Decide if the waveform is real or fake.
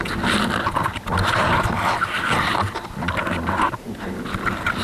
real